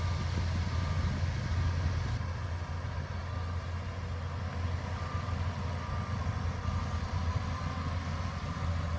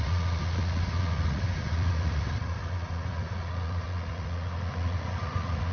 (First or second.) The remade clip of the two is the second